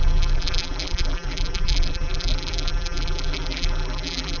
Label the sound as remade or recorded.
remade